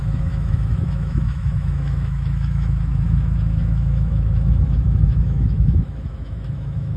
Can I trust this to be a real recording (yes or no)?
no